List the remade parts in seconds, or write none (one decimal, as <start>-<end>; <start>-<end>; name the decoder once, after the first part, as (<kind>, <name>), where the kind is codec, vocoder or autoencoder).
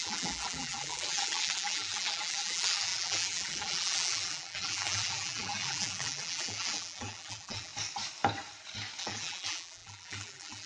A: 0.0-7.7 (vocoder, BigVGAN v2); 9.0-10.7